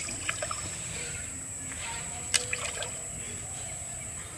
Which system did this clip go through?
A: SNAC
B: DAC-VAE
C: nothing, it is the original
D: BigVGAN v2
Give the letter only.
C